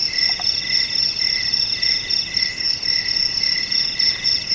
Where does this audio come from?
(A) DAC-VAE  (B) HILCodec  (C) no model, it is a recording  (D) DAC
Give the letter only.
C